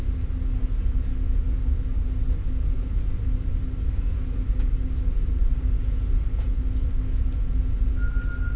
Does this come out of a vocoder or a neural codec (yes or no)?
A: no